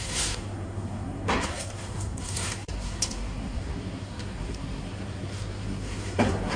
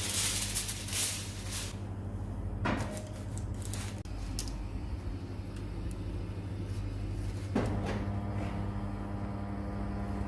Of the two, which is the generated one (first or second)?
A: first